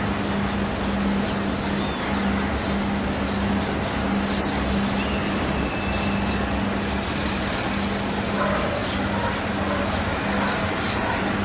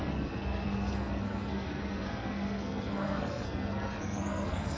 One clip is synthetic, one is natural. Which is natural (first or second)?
first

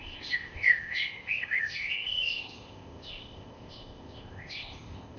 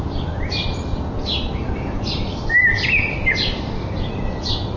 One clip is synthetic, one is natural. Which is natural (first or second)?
second